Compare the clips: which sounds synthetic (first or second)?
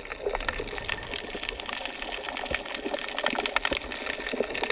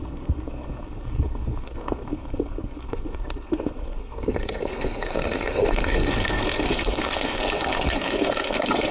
second